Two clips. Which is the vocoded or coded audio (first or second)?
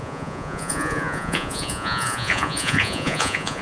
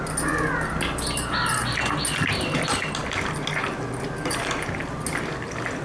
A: first